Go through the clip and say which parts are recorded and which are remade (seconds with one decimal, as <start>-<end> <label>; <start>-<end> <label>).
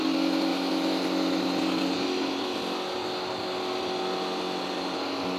0.0-5.4 recorded